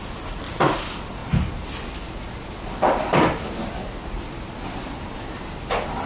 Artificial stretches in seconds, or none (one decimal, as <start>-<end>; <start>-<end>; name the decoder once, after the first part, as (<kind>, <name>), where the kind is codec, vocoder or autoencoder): 0.0-1.2 (vocoder, BigVGAN v2); 4.9-6.1